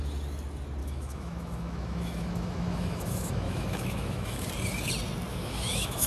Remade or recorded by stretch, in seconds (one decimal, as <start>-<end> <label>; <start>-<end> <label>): 0.0-0.8 recorded; 0.8-4.5 remade; 4.5-5.3 recorded; 5.3-6.1 remade